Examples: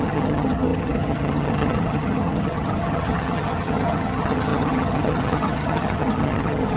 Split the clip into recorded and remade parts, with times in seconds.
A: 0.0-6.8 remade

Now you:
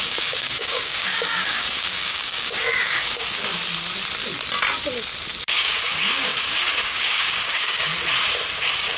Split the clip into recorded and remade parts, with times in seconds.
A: 0.0-3.5 remade; 3.5-5.4 recorded; 5.4-7.9 remade; 7.9-8.6 recorded; 8.6-9.0 remade

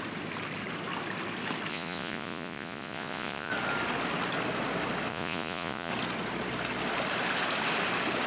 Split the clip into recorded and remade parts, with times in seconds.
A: 0.0-1.7 recorded; 1.7-3.5 remade; 3.5-5.1 recorded; 5.1-5.9 remade; 5.9-8.3 recorded

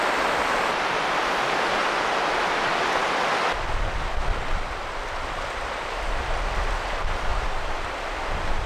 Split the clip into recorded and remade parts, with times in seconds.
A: 0.0-7.3 recorded; 7.3-8.7 remade

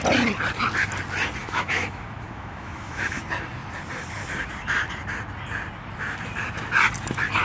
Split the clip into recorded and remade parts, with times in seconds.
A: 0.0-1.4 recorded; 1.4-3.2 remade; 3.2-7.4 recorded

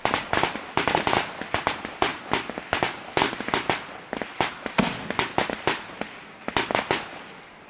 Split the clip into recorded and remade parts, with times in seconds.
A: 0.0-7.7 recorded

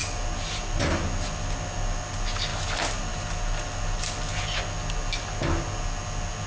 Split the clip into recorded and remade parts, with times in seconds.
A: 0.0-6.5 recorded

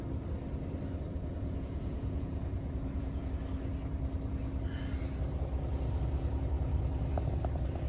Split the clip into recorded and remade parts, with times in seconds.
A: 0.0-1.1 recorded; 1.1-3.3 remade; 3.3-7.9 recorded